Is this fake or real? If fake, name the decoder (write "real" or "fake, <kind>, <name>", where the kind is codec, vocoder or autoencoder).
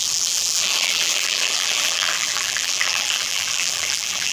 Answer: fake, vocoder, BigVGAN v2